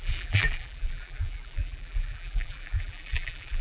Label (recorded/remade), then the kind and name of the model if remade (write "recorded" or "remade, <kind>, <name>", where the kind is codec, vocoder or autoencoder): remade, vocoder, BigVGAN v2